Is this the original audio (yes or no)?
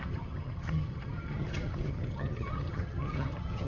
no